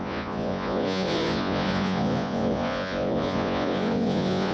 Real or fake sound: fake